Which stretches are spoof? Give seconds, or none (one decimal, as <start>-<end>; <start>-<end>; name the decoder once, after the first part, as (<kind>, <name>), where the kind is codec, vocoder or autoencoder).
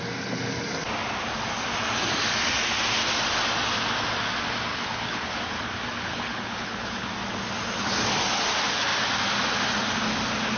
4.7-5.4 (codec, HILCodec); 5.9-7.1